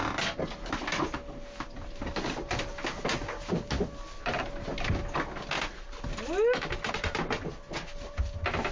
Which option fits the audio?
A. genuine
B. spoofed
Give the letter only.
A